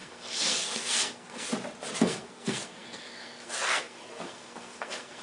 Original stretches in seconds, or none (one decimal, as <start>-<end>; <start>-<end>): 1.5-2.0